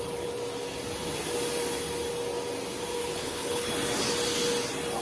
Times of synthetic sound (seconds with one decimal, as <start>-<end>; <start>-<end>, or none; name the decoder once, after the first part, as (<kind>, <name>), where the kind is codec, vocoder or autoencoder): 3.0-3.7 (codec, HILCodec)